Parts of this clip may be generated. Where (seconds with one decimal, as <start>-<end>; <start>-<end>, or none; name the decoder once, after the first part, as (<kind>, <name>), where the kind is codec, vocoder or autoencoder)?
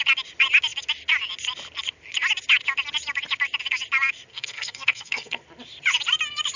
4.3-5.4 (codec, SNAC)